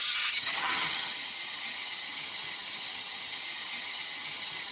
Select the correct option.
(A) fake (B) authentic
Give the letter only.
A